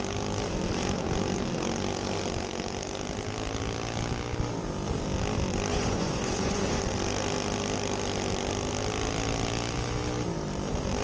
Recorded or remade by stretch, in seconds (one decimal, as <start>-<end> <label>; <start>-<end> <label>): 0.0-5.7 recorded; 5.7-6.8 remade; 6.8-11.0 recorded